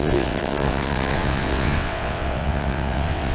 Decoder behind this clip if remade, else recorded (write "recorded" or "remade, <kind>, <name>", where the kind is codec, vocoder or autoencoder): remade, vocoder, WaveNeXt